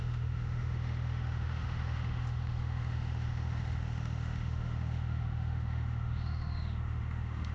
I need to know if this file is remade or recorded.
remade